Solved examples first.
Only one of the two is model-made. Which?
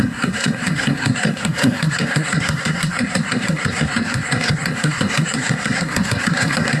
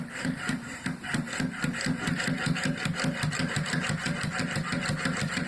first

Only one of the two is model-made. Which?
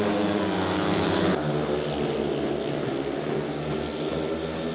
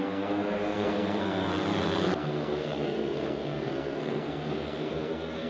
second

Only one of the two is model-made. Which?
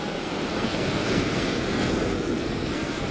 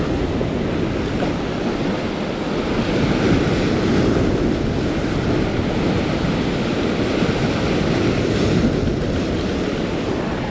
first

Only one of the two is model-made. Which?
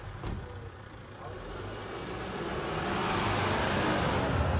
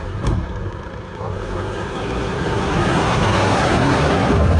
second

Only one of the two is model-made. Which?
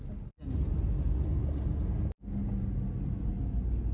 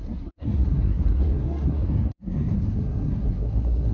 second